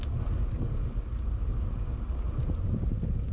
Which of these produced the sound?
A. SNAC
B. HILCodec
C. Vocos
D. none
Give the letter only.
D